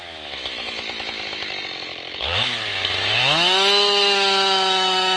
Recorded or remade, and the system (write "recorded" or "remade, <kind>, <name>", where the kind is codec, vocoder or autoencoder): remade, autoencoder, DAC-VAE